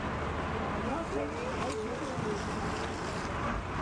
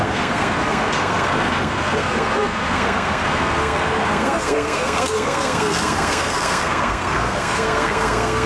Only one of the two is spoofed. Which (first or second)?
second